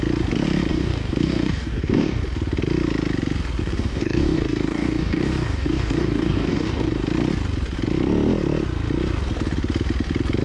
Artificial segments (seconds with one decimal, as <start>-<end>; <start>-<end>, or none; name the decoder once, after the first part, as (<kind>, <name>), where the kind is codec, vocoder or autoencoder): 0.7-2.2 (codec, DAC); 3.6-6.9